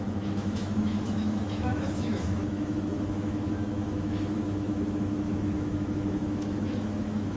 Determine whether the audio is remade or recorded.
remade